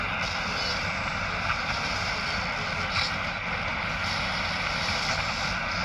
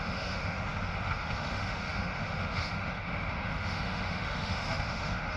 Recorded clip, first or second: first